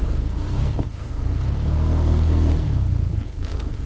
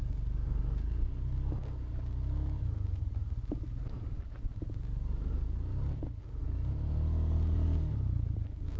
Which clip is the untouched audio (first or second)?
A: second